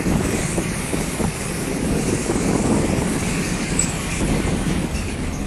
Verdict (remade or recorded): remade